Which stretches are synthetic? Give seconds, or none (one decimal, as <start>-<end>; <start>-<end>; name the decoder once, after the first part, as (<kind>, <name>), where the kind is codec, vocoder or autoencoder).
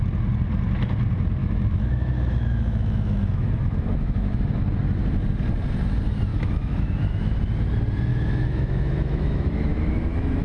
1.4-4.4 (autoencoder, DAC-VAE); 6.3-7.4; 8.1-10.4